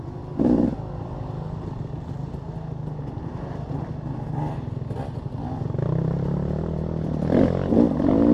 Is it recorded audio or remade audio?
recorded